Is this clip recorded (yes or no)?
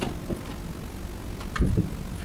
yes